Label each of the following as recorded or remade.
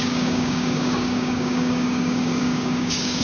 remade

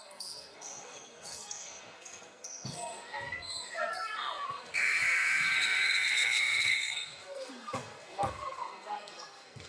remade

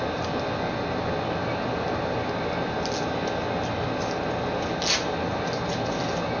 recorded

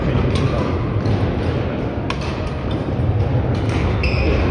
recorded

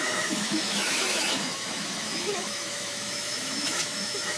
remade